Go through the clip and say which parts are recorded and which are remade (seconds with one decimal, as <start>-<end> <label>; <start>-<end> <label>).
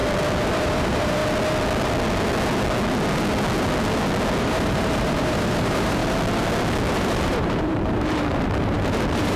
0.0-0.6 recorded; 0.6-1.2 remade; 1.2-4.4 recorded; 4.4-6.0 remade; 6.0-7.0 recorded; 7.0-9.4 remade